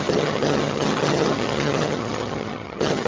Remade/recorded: remade